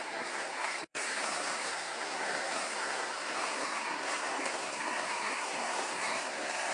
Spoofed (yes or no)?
yes